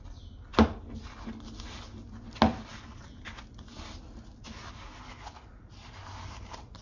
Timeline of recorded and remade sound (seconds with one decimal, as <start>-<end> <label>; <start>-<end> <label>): 0.0-6.8 recorded